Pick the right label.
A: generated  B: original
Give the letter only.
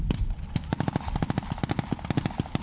B